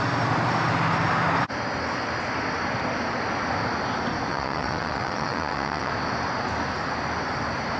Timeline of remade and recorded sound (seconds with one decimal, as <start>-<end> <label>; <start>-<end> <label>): 0.0-4.3 recorded; 4.3-5.9 remade; 5.9-7.8 recorded